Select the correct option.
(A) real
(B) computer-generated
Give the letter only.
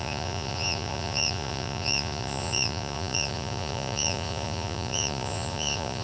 B